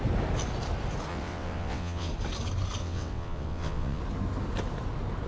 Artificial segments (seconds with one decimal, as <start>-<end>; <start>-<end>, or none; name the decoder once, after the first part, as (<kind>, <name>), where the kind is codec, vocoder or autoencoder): 1.1-2.1 (vocoder, WaveNeXt); 2.8-4.0